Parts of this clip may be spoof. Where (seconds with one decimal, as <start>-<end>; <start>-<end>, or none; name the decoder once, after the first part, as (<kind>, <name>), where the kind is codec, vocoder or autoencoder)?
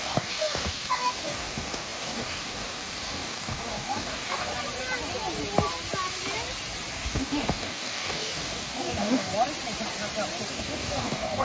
0.0-4.5 (codec, DAC); 6.9-9.3; 10.5-11.4